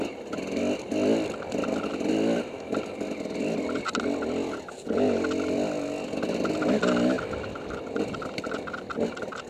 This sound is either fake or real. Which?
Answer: real